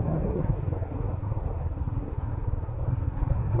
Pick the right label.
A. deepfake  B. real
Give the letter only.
A